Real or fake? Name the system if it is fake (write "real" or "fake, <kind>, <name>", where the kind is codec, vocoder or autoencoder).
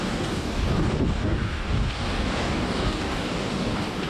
fake, codec, DAC